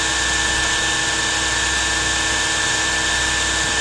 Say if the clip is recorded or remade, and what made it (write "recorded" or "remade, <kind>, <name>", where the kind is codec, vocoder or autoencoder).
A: recorded